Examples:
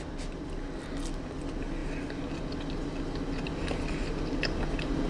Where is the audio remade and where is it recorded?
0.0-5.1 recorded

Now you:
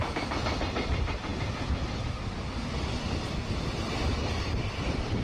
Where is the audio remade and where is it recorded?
0.0-5.2 recorded

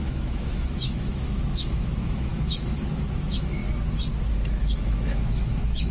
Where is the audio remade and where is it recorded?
0.0-3.6 remade; 3.6-4.3 recorded; 4.3-5.9 remade